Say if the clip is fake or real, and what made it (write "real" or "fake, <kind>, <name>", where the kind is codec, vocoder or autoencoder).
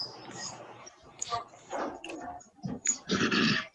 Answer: fake, vocoder, BigVGAN v2